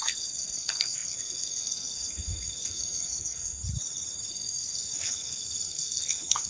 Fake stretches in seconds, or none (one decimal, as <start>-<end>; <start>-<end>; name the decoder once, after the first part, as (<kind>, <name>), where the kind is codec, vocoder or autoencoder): 0.0-3.6 (codec, SNAC); 4.3-6.5